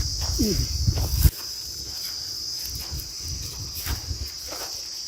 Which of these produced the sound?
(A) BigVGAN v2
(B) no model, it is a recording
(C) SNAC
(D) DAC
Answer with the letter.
B